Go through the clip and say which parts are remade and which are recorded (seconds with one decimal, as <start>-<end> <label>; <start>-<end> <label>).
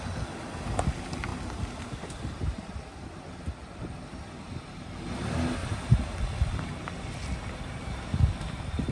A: 0.0-1.3 recorded; 1.3-4.5 remade; 4.5-5.6 recorded; 5.6-8.9 remade